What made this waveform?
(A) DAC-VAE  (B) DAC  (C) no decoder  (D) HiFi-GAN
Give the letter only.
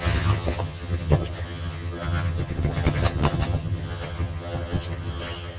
D